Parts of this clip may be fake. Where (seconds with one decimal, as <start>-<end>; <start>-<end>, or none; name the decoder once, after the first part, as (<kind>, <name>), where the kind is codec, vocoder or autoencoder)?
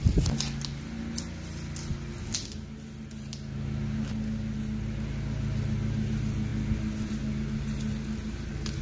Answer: none